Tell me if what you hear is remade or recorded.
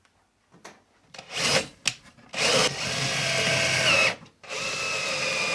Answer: recorded